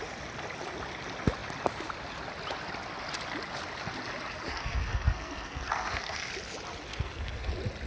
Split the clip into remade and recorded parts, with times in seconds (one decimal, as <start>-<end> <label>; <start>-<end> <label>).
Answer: 0.0-4.5 recorded; 4.5-6.3 remade; 6.3-6.9 recorded; 6.9-7.5 remade; 7.5-7.9 recorded